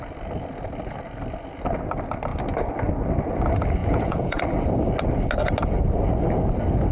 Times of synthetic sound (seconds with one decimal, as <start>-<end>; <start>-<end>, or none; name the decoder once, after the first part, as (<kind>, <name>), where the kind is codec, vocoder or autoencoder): 3.8-4.4 (vocoder, Vocos)